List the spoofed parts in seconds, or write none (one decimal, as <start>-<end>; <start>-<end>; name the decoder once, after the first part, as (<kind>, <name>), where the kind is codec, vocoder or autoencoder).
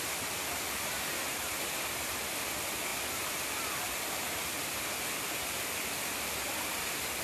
none